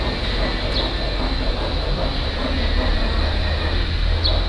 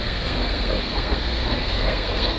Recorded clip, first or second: first